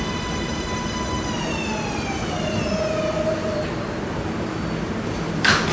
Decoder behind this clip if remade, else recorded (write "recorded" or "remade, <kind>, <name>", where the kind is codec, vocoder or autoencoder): recorded